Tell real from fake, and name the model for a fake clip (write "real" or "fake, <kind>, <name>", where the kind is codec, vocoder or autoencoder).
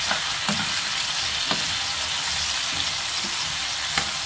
real